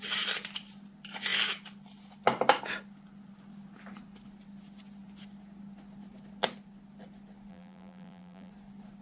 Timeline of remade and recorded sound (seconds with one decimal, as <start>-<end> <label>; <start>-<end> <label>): 0.0-7.5 recorded; 7.5-8.5 remade; 8.5-9.0 recorded